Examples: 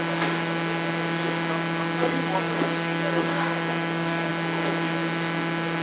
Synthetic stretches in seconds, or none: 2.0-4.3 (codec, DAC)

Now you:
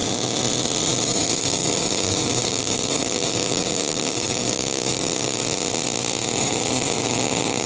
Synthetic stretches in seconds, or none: 1.0-5.4 (codec, DAC); 6.4-7.7

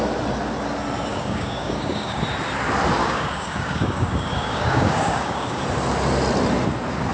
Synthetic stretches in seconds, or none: 1.1-2.2 (codec, DAC); 3.0-5.6

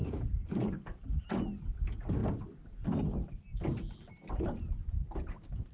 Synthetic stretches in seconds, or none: 0.0-0.8 (codec, DAC)

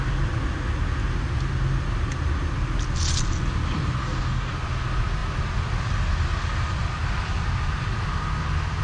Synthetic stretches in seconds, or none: 4.0-4.5 (codec, DAC)

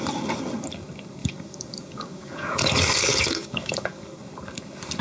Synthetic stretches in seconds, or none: 1.2-4.2 (codec, DAC)